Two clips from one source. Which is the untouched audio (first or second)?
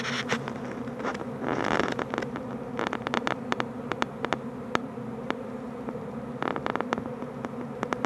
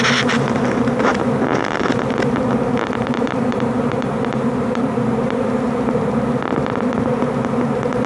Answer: first